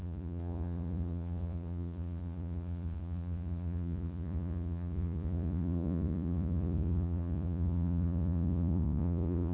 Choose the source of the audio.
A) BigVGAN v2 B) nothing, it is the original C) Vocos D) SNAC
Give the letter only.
C